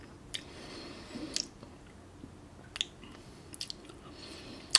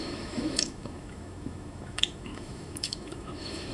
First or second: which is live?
first